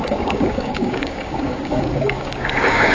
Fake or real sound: fake